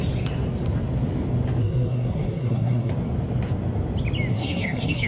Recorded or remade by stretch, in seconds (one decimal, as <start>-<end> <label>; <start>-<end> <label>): 0.0-1.6 recorded; 1.6-2.9 remade; 2.9-4.3 recorded; 4.3-5.1 remade